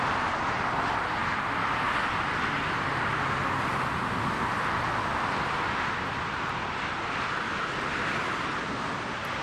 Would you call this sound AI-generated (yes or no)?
no